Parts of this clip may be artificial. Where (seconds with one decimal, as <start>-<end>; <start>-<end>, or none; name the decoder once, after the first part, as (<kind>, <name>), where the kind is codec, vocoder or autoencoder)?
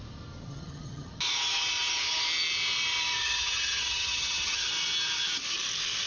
0.5-1.2 (vocoder, HiFi-GAN); 3.2-4.7